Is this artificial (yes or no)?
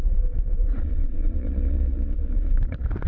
yes